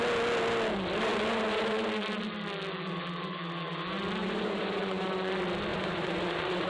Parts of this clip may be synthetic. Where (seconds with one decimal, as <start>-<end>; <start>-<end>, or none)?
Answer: 4.2-5.3; 5.7-6.7